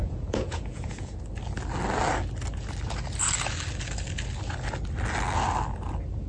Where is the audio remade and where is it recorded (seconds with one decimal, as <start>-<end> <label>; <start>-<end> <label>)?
0.0-1.2 remade; 1.2-6.3 recorded